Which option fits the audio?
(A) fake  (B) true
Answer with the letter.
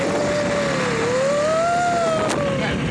B